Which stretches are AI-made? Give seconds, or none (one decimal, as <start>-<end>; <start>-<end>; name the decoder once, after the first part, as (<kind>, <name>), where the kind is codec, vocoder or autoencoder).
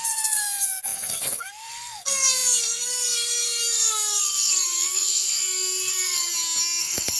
0.0-6.3 (codec, SNAC); 6.8-7.2